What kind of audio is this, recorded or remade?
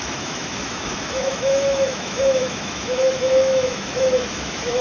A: remade